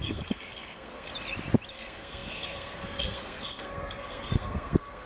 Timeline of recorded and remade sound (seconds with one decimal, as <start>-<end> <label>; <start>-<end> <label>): 0.0-1.1 remade; 1.1-1.7 recorded; 1.7-5.1 remade

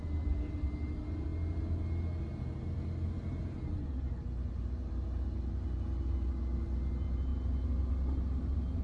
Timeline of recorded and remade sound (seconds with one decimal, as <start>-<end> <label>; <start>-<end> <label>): 0.0-8.8 recorded

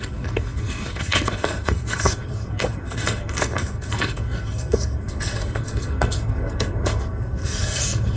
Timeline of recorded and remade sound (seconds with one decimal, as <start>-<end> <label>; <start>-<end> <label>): 0.0-8.2 remade

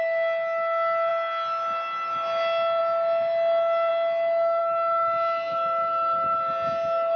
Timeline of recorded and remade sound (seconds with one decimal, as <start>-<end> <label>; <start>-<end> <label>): 0.0-7.2 recorded

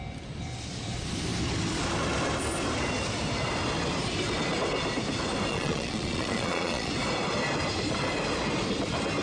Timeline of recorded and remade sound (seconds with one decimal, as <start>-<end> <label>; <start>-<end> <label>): 0.0-5.5 recorded; 5.5-6.9 remade; 6.9-9.2 recorded

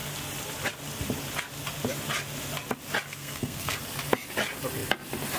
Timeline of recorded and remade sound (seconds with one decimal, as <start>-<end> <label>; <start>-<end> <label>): 0.0-3.1 recorded; 3.1-3.8 remade; 3.8-5.4 recorded

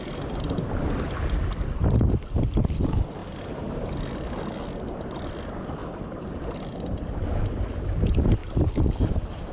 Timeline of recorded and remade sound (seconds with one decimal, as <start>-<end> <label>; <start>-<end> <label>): 0.0-3.2 remade; 3.2-4.5 recorded; 4.5-5.8 remade; 5.8-6.7 recorded; 6.7-9.5 remade